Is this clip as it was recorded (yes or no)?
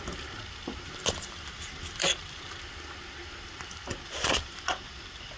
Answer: yes